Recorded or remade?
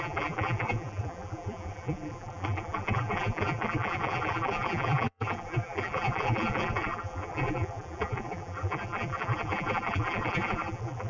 remade